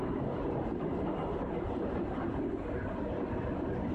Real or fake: real